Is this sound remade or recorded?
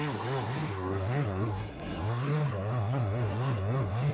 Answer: remade